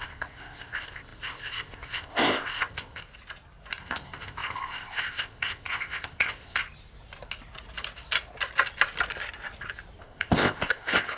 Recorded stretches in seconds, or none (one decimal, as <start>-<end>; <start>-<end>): 3.0-3.8; 6.6-10.0

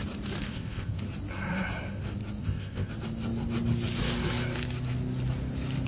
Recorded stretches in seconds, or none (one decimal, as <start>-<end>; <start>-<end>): 0.0-0.5; 1.0-2.4; 2.9-5.9

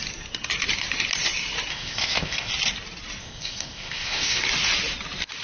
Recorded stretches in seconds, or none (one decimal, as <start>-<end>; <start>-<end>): 0.0-1.7; 2.5-3.2; 4.4-5.4

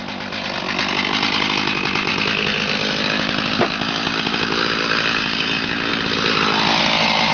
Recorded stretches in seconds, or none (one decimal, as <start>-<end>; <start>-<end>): 0.0-7.3

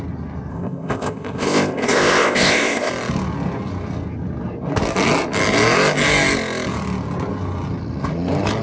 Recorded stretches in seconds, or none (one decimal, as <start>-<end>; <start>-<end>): 0.0-0.5; 2.9-8.6

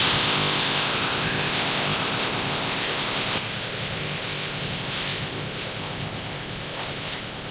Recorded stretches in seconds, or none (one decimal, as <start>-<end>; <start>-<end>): none